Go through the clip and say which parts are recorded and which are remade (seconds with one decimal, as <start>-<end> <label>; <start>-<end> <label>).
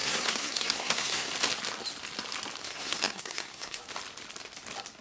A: 0.0-1.3 remade; 1.3-2.6 recorded; 2.6-3.8 remade; 3.8-5.0 recorded